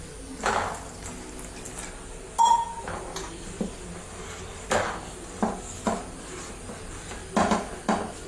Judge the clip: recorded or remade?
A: recorded